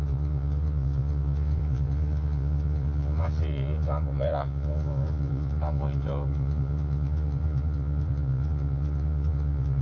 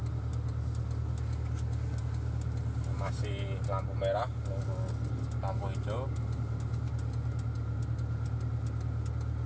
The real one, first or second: second